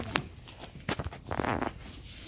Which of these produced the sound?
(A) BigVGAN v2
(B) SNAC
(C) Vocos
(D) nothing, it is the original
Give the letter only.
D